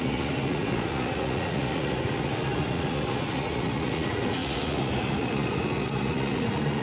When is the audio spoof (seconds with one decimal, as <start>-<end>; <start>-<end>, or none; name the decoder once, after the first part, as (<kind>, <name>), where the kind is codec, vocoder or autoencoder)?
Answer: 0.0-6.8 (vocoder, Vocos)